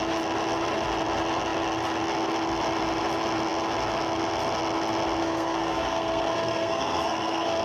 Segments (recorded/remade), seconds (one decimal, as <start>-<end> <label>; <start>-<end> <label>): 0.0-5.2 recorded; 5.2-7.6 remade